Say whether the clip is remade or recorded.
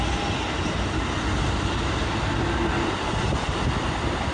recorded